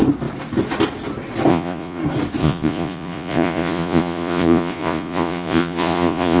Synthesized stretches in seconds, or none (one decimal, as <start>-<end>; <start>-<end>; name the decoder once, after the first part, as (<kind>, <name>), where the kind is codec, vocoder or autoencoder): 1.5-2.0 (vocoder, Vocos); 2.4-6.4